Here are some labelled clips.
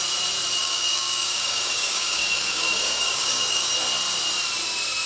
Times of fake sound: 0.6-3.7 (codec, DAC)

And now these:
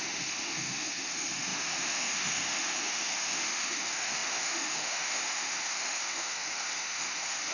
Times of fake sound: 0.0-7.5 (autoencoder, DAC-VAE)

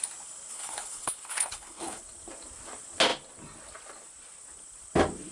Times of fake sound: 0.5-2.0 (codec, HILCodec)